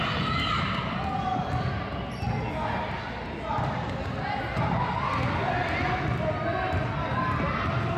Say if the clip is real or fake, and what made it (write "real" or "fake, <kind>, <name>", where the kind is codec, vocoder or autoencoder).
real